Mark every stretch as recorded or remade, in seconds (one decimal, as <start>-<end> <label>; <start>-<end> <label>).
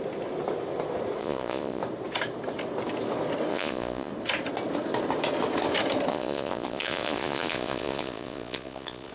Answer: 0.0-1.2 recorded; 1.2-1.8 remade; 1.8-3.5 recorded; 3.5-4.1 remade; 4.1-6.1 recorded; 6.1-9.1 remade